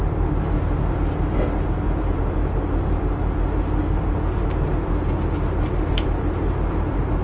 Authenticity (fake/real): real